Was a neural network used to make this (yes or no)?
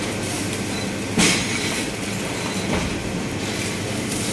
yes